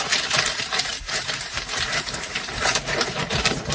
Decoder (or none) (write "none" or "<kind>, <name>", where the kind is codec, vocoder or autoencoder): vocoder, BigVGAN v2